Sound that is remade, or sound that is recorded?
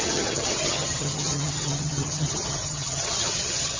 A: remade